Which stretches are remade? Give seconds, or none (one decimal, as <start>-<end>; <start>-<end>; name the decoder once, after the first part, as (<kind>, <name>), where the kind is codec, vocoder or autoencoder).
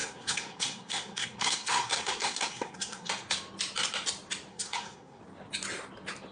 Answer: 0.0-3.1 (codec, SNAC); 4.5-5.2